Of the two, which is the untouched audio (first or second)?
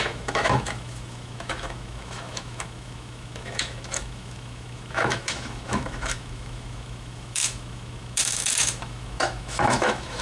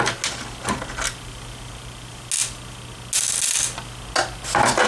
second